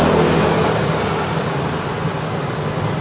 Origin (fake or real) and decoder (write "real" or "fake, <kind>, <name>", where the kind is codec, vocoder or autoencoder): real